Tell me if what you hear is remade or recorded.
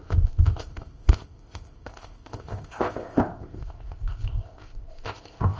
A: remade